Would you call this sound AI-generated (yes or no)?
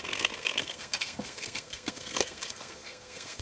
yes